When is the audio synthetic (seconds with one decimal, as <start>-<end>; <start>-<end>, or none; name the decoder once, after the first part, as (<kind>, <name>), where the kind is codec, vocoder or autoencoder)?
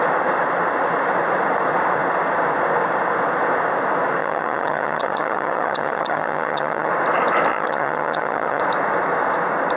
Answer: 4.2-6.9 (vocoder, HiFi-GAN); 7.5-8.6